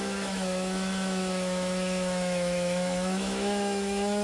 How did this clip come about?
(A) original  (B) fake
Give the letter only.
B